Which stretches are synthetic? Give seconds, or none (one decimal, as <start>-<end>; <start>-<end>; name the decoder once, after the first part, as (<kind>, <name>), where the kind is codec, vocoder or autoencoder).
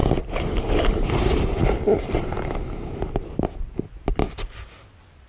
none